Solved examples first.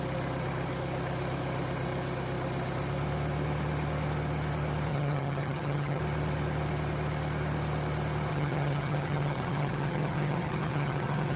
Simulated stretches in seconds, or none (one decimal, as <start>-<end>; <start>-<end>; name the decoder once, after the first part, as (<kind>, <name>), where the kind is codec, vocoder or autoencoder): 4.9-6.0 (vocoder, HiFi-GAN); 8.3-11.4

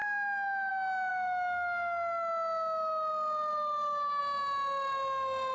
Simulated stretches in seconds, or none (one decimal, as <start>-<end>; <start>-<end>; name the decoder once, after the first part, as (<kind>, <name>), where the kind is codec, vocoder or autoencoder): none

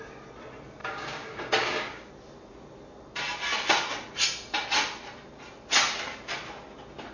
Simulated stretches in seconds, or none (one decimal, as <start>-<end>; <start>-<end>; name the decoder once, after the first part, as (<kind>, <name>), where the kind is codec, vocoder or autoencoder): 0.8-2.1 (codec, DAC)

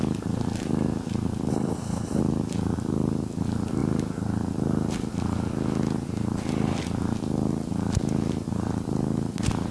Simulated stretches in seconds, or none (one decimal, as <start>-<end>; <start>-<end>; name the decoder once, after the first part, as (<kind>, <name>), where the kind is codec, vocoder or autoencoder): 1.5-2.2 (codec, HILCodec)

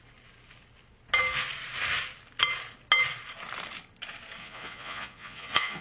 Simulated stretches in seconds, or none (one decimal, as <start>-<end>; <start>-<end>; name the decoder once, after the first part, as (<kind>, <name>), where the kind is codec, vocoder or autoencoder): 4.4-5.8 (vocoder, Vocos)

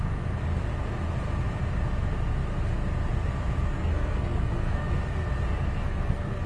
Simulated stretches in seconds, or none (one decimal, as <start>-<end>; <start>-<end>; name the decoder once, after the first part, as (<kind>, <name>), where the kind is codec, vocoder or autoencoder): 3.8-4.9 (codec, SNAC); 5.8-6.5

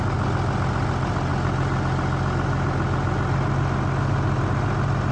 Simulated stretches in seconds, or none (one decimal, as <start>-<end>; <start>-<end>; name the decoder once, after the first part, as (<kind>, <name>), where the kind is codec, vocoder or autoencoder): none

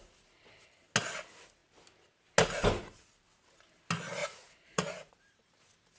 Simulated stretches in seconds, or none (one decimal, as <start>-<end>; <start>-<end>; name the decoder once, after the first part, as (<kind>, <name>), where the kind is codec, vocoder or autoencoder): 4.2-5.1 (vocoder, Vocos)